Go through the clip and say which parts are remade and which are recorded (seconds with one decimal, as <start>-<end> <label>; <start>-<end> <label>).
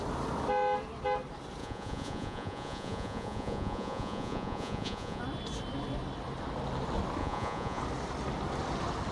0.0-1.6 recorded; 1.6-5.2 remade; 5.2-7.2 recorded; 7.2-7.8 remade; 7.8-9.1 recorded